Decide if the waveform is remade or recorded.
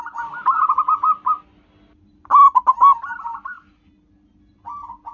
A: recorded